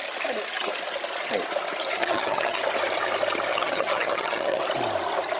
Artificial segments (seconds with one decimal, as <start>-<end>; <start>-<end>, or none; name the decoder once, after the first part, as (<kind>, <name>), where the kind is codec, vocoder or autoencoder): 1.9-2.6 (vocoder, HiFi-GAN); 3.5-4.6